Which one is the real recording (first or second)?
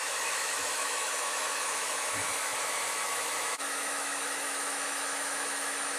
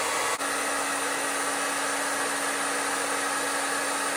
second